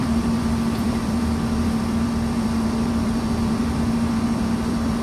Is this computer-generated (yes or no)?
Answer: yes